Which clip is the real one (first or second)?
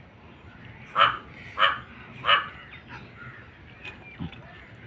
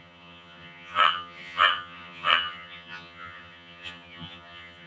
first